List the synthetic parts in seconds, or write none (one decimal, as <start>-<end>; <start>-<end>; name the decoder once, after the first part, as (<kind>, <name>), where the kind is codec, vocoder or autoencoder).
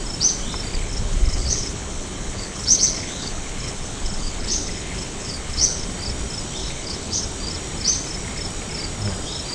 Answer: 0.7-5.9 (codec, HILCodec); 6.6-7.2